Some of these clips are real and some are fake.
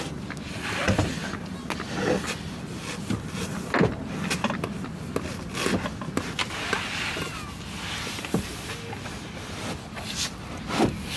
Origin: real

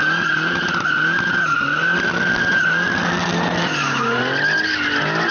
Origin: real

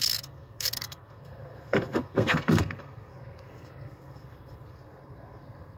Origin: fake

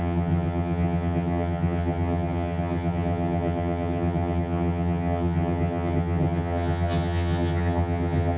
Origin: fake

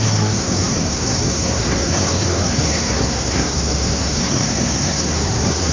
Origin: fake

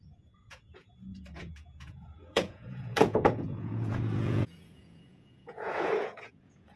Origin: fake